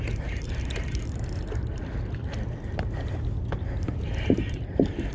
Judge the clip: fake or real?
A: real